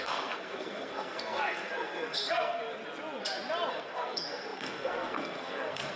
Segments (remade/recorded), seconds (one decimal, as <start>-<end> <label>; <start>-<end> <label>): 0.0-2.6 remade; 2.6-3.7 recorded; 3.7-6.0 remade